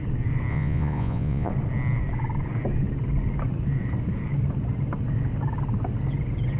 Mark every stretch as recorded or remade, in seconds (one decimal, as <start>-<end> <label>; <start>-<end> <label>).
0.0-0.5 recorded; 0.5-1.5 remade; 1.5-6.6 recorded